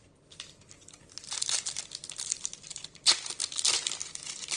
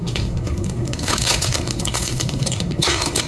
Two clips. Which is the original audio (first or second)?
first